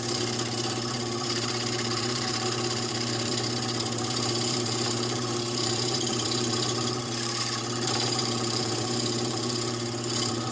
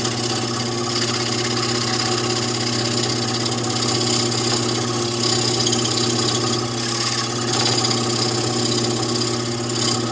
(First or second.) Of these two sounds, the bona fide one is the second